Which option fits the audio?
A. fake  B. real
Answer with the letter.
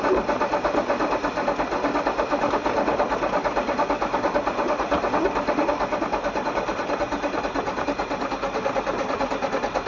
B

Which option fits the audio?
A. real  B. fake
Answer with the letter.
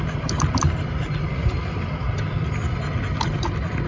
A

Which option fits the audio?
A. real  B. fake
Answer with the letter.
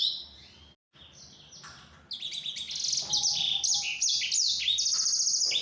A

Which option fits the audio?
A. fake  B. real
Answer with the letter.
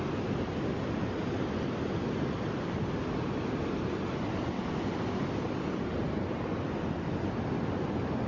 B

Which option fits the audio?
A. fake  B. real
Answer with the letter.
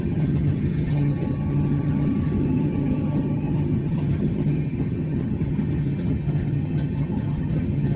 A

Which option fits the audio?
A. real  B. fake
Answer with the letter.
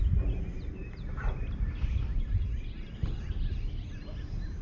A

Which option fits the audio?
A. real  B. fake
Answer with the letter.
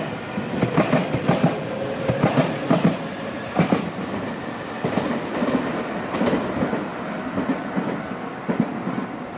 A